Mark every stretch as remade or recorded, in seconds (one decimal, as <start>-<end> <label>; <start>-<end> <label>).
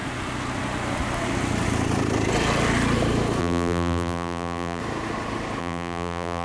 0.0-3.4 recorded; 3.4-4.8 remade; 4.8-5.6 recorded; 5.6-6.4 remade